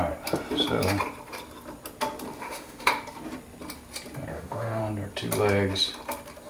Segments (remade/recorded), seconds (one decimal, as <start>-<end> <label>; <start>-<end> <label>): 0.0-2.4 recorded; 2.4-2.9 remade; 2.9-4.3 recorded; 4.3-4.8 remade; 4.8-6.5 recorded

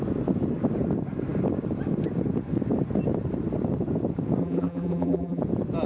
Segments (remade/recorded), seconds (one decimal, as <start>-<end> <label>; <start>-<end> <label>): 0.0-4.4 recorded; 4.4-5.4 remade; 5.4-5.9 recorded

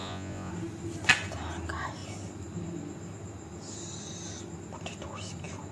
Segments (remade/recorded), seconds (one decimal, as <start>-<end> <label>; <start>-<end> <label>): 0.0-0.5 remade; 0.5-5.7 recorded

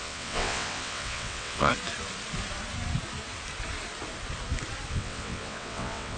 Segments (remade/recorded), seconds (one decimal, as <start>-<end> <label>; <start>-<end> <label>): 0.0-1.7 remade; 1.7-4.9 recorded; 4.9-6.2 remade